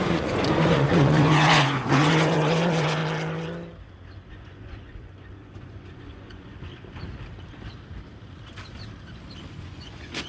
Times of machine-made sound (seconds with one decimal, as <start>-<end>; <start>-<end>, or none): 0.0-3.0; 4.3-6.7; 9.5-10.3